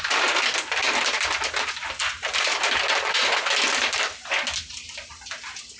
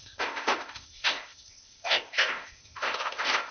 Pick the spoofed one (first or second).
second